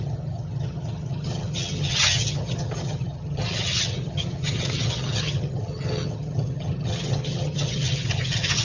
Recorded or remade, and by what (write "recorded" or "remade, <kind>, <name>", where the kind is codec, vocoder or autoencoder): remade, vocoder, HiFi-GAN